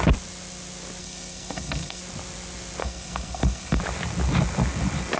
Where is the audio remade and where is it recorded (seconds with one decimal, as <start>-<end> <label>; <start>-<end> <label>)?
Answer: 0.0-1.0 recorded; 1.0-2.0 remade; 2.0-2.8 recorded; 2.8-3.8 remade; 3.8-5.2 recorded